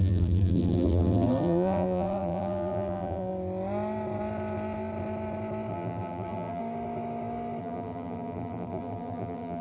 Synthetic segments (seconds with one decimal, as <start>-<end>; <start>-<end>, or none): 0.0-3.3; 5.7-6.6; 7.6-9.6